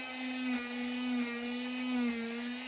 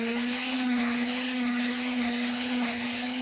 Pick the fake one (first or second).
second